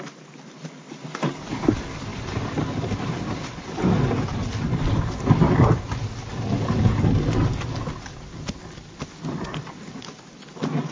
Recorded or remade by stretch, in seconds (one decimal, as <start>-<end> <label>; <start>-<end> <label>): 0.0-2.1 recorded; 2.1-4.0 remade; 4.0-10.9 recorded